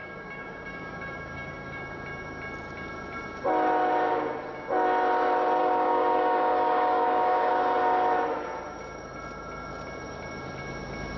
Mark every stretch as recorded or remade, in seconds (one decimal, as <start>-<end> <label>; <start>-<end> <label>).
0.0-1.8 remade; 1.8-5.6 recorded; 5.6-7.5 remade; 7.5-11.2 recorded